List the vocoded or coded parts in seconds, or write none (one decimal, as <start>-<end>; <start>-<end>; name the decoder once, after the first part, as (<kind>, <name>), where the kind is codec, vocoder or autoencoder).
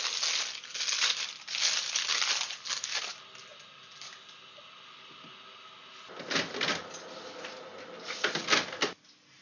none